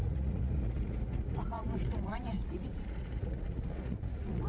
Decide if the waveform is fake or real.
fake